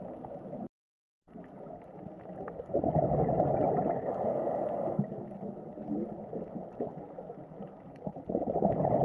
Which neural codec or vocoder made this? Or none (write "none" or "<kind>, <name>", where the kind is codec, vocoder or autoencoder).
none